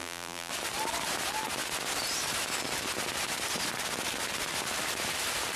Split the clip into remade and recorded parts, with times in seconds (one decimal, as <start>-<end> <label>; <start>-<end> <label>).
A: 0.0-0.5 remade; 0.5-5.6 recorded